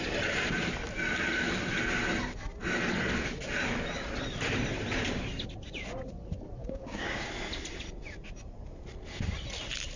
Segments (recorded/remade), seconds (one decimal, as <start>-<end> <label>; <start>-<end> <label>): 0.0-6.6 recorded; 6.6-7.3 remade; 7.3-10.0 recorded